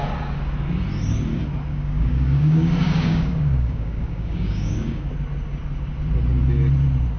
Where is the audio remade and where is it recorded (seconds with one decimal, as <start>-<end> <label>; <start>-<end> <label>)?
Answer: 0.0-1.7 recorded; 1.7-5.1 remade; 5.1-7.2 recorded